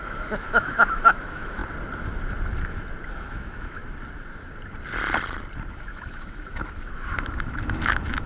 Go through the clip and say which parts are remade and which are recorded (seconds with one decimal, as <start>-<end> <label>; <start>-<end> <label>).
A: 0.0-1.6 remade; 1.6-3.1 recorded; 3.1-3.8 remade; 3.8-5.7 recorded; 5.7-8.3 remade

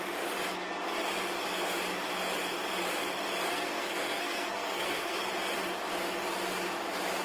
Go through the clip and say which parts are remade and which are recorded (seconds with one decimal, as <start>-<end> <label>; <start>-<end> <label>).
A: 0.0-3.5 recorded; 3.5-5.2 remade; 5.2-7.2 recorded

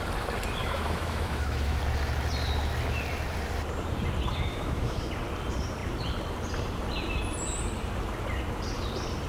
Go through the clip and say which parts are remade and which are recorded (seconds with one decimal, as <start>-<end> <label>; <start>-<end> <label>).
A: 0.0-0.6 recorded; 0.6-1.8 remade; 1.8-4.5 recorded; 4.5-5.1 remade; 5.1-9.3 recorded